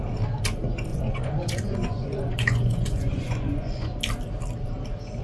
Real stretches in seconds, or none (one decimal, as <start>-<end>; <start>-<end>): 0.0-0.9; 4.0-5.2